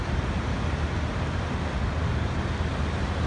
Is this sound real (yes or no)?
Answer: yes